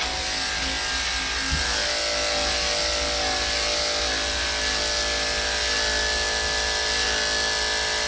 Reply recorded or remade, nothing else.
recorded